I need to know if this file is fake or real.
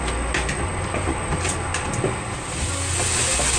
real